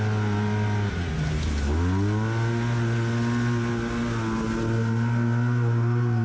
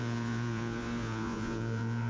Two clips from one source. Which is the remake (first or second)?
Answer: second